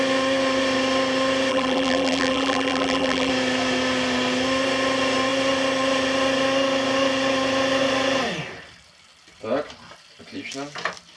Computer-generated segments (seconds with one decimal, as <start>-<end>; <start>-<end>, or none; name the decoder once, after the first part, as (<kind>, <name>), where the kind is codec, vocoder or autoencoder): 1.5-3.3 (vocoder, BigVGAN v2)